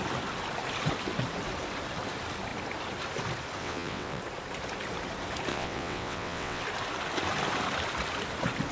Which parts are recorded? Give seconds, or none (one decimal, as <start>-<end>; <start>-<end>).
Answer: 0.0-3.6; 4.2-5.5; 6.6-8.7

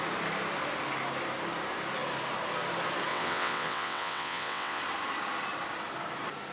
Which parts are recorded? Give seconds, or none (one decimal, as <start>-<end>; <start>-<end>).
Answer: 0.0-3.1; 4.8-6.5

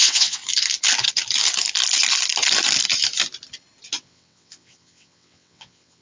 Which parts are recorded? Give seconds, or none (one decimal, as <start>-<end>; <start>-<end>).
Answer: 0.4-4.0

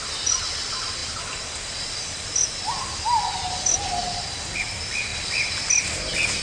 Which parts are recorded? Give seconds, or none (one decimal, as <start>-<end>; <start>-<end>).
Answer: 0.0-6.4